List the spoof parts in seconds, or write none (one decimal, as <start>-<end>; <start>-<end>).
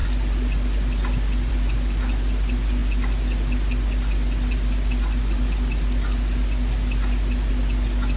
none